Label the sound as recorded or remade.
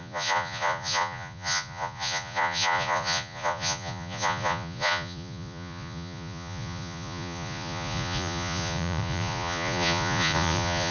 remade